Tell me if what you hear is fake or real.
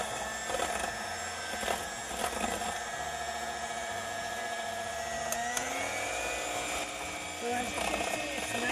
real